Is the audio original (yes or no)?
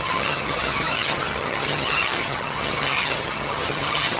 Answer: no